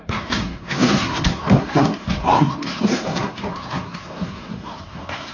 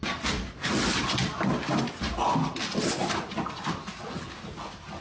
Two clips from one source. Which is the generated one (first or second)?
first